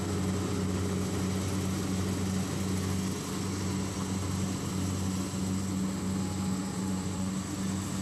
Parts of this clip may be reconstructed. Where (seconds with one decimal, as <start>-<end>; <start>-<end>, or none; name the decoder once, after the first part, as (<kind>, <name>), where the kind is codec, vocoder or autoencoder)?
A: 6.6-7.3 (vocoder, Vocos)